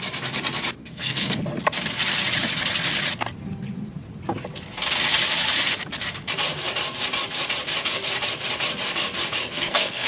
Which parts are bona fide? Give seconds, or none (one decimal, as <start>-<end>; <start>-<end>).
0.0-0.8; 1.4-9.4